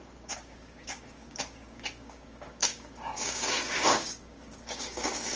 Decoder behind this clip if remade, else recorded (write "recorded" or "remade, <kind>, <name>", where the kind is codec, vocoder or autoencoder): remade, codec, DAC